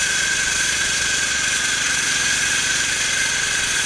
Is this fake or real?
fake